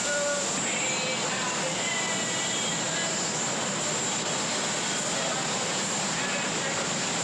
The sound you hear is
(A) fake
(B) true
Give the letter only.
B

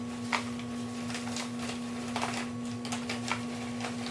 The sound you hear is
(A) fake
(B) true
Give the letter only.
B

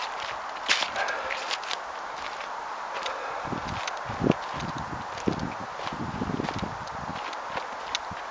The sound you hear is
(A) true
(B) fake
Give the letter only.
A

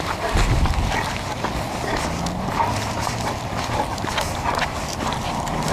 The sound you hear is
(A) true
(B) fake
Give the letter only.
A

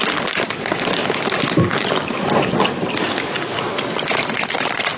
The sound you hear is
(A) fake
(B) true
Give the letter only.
B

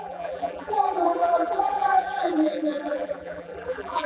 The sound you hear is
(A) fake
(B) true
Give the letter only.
A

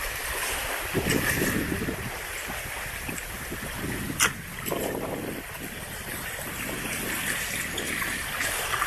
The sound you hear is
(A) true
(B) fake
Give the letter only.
A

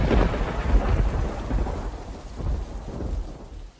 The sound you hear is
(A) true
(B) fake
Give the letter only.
A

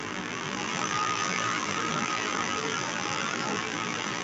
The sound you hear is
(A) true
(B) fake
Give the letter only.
B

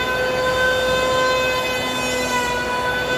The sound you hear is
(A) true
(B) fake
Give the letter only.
A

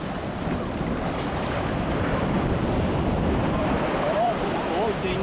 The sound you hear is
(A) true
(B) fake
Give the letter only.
B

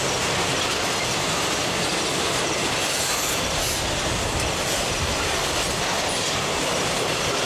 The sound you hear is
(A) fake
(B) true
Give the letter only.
B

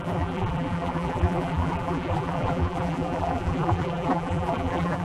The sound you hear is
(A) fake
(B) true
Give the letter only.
A